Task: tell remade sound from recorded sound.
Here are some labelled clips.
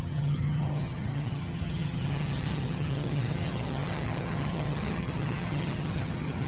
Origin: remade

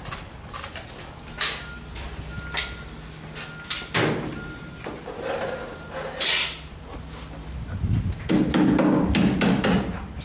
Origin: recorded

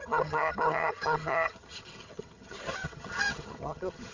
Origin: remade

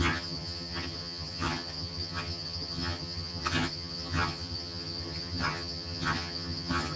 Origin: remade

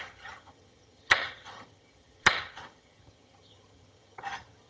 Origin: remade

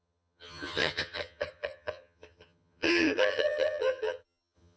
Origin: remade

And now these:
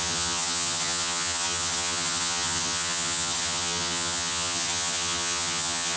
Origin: remade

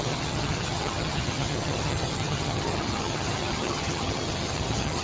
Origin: remade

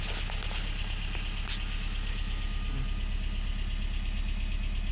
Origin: recorded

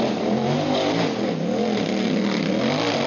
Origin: recorded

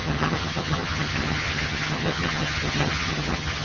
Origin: remade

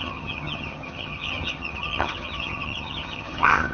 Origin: remade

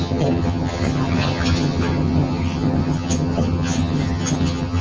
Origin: remade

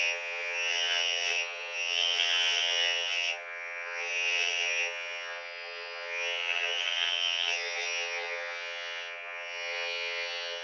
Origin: remade